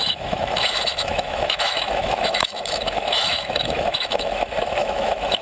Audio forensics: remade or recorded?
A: remade